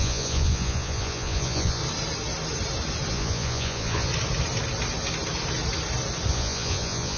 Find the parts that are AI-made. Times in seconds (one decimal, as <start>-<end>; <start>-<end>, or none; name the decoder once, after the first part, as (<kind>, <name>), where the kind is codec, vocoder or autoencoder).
0.0-1.8 (vocoder, Vocos); 3.1-4.1; 6.3-7.2